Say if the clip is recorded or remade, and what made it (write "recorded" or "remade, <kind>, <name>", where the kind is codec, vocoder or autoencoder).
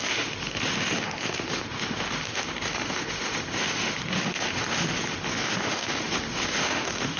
remade, autoencoder, DAC-VAE